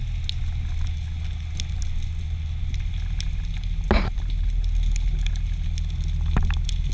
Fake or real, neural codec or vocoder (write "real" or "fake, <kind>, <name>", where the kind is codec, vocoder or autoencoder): real